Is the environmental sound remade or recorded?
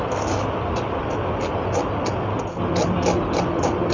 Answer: recorded